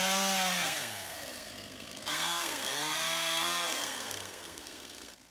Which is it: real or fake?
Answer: fake